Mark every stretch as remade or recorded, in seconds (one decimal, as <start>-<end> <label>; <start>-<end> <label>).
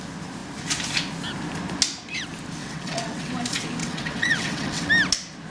0.0-2.6 recorded; 2.6-3.3 remade; 3.3-3.8 recorded; 3.8-4.9 remade; 4.9-5.5 recorded